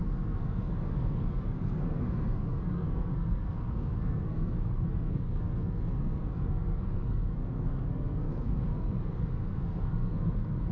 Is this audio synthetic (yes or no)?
yes